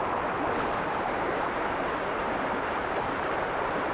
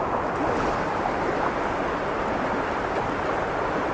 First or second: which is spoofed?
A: first